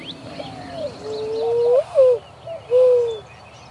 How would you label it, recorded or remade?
recorded